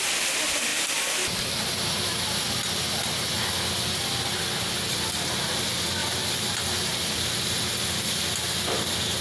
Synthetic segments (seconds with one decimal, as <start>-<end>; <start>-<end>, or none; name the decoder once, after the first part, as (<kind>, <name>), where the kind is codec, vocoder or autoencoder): none